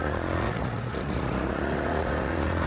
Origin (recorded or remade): remade